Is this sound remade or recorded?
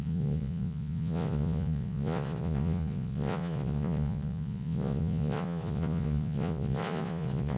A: remade